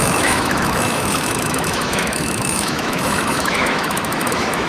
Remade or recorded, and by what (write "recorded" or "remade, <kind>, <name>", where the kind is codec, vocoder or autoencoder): remade, autoencoder, DAC-VAE